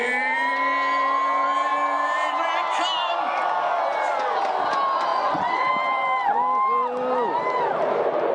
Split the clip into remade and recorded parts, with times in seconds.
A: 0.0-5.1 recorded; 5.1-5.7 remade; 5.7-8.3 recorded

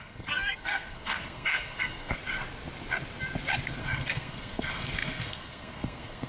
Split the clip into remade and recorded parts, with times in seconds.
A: 0.0-2.2 remade; 2.2-3.8 recorded; 3.8-6.3 remade